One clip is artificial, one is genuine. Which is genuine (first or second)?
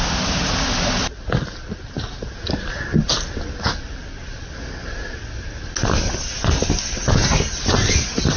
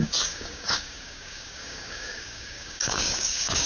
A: first